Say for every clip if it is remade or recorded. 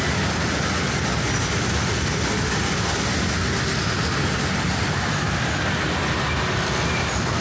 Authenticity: recorded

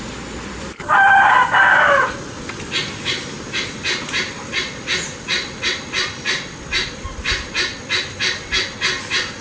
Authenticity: recorded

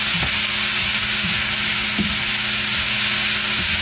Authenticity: recorded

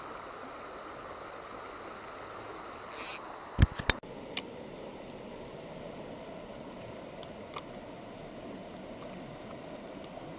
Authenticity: recorded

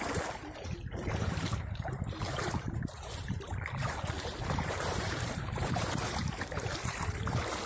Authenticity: remade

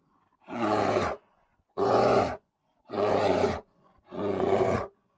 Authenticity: remade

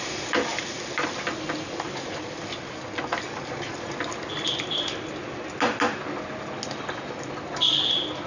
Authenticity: recorded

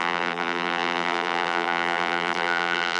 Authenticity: remade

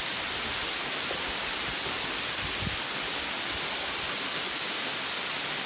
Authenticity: recorded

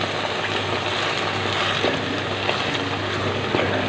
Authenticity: recorded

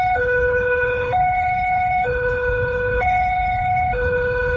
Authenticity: remade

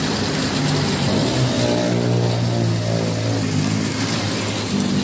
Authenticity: recorded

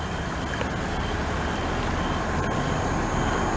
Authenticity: recorded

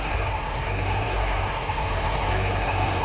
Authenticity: remade